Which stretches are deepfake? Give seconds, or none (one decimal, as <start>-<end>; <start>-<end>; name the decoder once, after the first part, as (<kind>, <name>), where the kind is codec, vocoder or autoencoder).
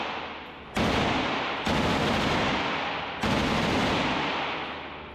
none